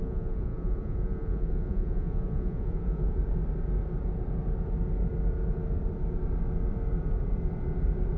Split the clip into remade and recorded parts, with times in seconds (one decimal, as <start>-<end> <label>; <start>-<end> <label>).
0.0-3.2 remade; 3.2-8.2 recorded